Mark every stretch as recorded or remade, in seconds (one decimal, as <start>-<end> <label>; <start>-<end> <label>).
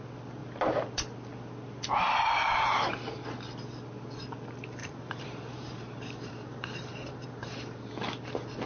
0.0-4.8 recorded; 4.8-7.9 remade; 7.9-8.7 recorded